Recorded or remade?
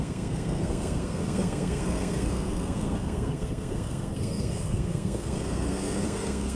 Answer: remade